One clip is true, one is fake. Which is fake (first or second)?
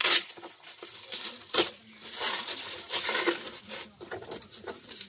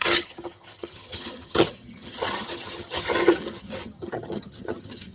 second